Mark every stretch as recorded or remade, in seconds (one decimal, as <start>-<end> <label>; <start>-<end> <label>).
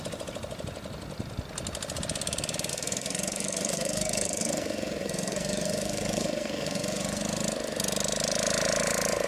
0.0-2.7 recorded; 2.7-7.2 remade; 7.2-9.3 recorded